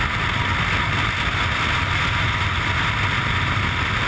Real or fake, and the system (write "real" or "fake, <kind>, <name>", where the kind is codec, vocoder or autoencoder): real